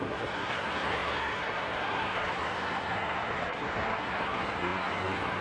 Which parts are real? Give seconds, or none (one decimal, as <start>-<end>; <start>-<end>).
none

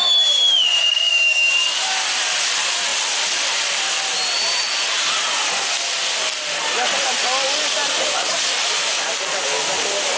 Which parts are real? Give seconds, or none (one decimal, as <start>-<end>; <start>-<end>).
0.0-0.8; 1.5-10.2

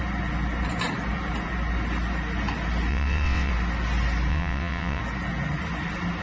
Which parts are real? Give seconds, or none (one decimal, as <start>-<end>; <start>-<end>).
0.0-2.9; 3.5-4.3; 5.0-6.2